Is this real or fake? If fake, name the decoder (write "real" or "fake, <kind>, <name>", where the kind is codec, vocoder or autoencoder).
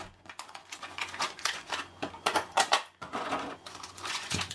fake, vocoder, Vocos